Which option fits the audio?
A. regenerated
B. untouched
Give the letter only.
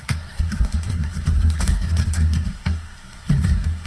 A